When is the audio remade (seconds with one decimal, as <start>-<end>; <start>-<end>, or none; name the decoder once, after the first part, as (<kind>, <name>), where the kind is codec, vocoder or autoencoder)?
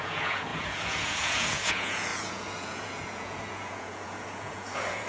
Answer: 0.0-5.1 (vocoder, Vocos)